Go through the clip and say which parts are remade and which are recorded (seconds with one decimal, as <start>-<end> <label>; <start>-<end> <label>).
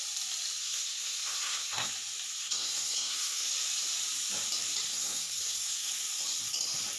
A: 0.0-0.6 recorded; 0.6-1.9 remade; 1.9-2.4 recorded; 2.4-3.5 remade; 3.5-4.9 recorded; 4.9-5.9 remade; 5.9-7.0 recorded